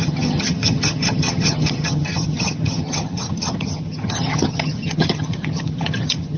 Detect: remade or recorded remade